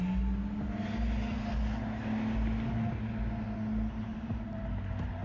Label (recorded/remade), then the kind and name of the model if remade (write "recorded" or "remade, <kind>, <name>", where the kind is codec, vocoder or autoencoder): recorded